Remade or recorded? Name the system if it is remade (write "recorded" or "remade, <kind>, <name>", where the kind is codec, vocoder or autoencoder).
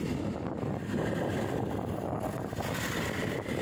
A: recorded